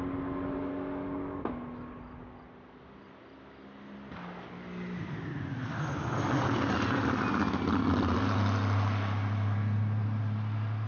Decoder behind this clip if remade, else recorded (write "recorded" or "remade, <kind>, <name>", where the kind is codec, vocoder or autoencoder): recorded